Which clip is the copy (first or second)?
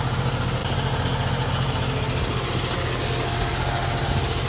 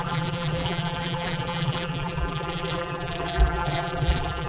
second